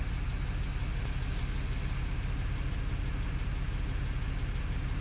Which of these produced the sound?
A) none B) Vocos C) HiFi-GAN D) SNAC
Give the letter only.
A